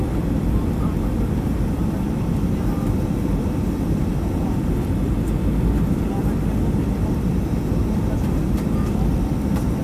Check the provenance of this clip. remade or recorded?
recorded